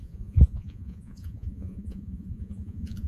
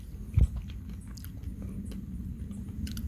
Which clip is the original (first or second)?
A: second